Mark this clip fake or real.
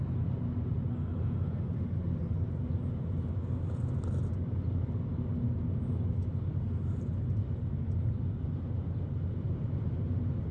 real